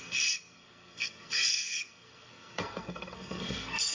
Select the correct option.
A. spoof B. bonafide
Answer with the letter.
A